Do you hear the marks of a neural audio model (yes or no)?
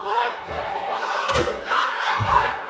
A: yes